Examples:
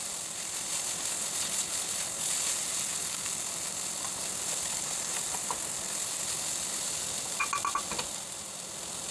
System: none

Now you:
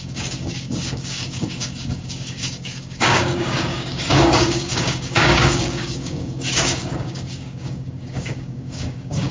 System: codec, DAC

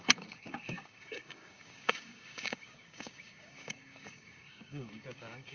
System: codec, DAC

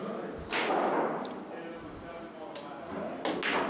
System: none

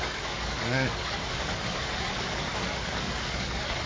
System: codec, DAC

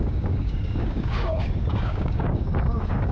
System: codec, DAC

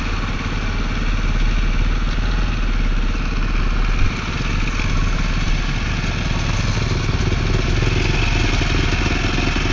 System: none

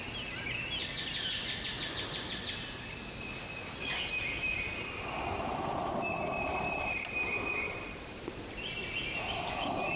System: none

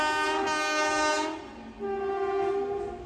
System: none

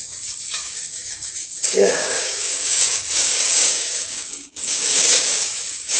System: codec, DAC